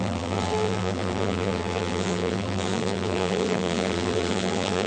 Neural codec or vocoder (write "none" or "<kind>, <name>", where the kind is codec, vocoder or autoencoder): vocoder, BigVGAN v2